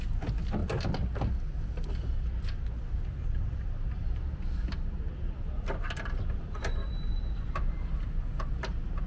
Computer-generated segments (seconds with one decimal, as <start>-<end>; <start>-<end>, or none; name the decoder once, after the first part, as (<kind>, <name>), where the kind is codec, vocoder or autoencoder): none

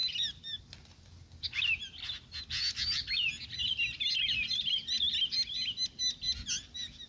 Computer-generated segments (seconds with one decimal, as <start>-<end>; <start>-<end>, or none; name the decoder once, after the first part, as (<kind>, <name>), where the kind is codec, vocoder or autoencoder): none

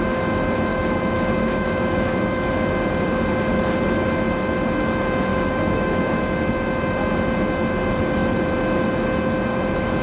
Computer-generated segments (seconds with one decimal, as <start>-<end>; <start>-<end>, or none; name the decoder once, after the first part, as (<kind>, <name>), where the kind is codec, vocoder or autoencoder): 0.7-2.5 (autoencoder, DAC-VAE); 5.3-6.2

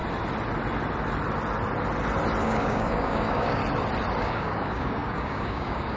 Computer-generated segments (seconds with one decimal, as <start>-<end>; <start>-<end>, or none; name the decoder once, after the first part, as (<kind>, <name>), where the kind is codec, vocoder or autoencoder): 2.4-3.6 (codec, DAC); 4.2-6.0

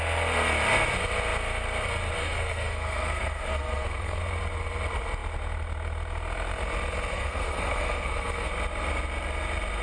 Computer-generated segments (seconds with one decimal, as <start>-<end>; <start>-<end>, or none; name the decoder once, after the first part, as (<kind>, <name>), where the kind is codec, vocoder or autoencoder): 2.2-4.2 (codec, SNAC); 7.1-8.5